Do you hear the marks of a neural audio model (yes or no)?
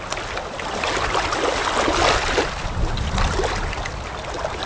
no